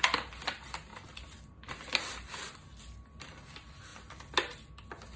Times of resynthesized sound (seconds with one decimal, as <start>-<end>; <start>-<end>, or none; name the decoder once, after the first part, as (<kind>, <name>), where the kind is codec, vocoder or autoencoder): none

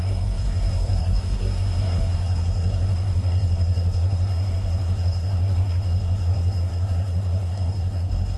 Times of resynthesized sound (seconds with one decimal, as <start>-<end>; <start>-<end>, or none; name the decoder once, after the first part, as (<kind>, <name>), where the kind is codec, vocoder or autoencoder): 0.0-8.4 (codec, SNAC)

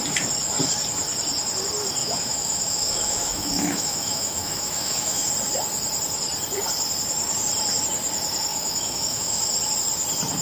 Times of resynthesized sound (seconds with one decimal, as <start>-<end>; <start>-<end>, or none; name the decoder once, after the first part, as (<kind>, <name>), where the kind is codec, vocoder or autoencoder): 2.0-5.3 (autoencoder, DAC-VAE); 8.5-9.4

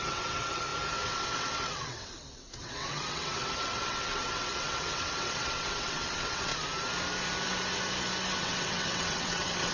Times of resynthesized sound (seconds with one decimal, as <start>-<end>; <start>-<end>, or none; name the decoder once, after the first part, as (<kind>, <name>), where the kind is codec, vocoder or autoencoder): 0.0-6.5 (vocoder, WaveNeXt); 8.4-9.7